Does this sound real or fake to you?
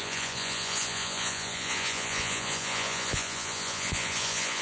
fake